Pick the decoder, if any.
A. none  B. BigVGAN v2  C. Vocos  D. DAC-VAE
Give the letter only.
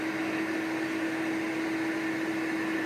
A